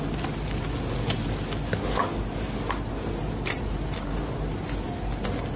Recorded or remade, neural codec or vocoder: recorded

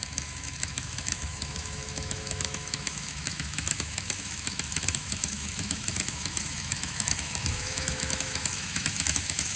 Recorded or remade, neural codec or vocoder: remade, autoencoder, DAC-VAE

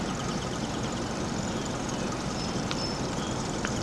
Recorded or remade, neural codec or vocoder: remade, vocoder, BigVGAN v2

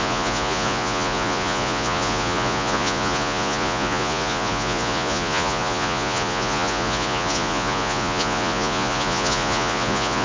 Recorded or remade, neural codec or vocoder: remade, vocoder, Vocos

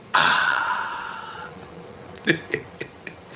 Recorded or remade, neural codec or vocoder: remade, vocoder, WaveNeXt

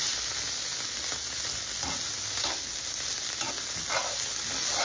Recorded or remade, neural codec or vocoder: recorded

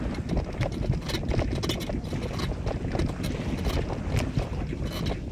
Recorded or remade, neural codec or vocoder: recorded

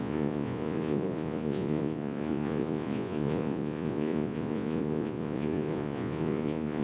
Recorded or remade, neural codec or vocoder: remade, vocoder, Vocos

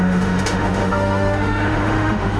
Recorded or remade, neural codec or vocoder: remade, autoencoder, DAC-VAE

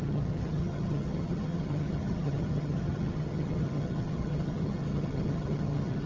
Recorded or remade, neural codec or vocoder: remade, vocoder, HiFi-GAN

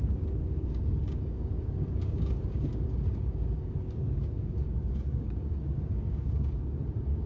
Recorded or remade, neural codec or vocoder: remade, codec, DAC